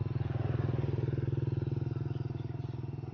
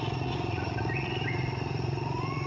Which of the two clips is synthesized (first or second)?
second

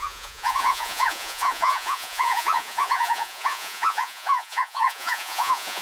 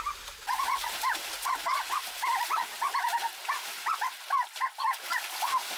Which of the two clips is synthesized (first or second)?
first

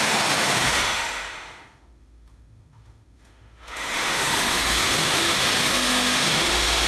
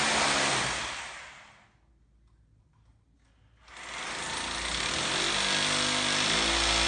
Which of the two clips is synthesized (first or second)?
first